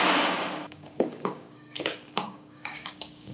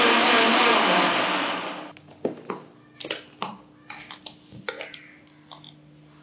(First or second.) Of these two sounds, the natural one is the second